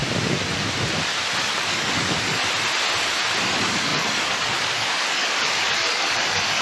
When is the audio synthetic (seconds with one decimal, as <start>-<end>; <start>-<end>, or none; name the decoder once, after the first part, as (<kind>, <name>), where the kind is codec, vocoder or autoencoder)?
1.4-2.4 (codec, DAC); 3.4-6.6